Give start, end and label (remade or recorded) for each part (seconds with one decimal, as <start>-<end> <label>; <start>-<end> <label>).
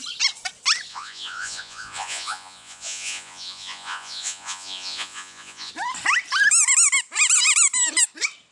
0.0-0.9 recorded; 0.9-5.7 remade; 5.7-8.5 recorded